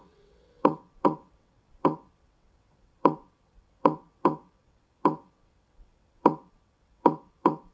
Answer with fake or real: fake